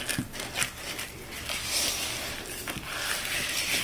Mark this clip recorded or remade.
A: recorded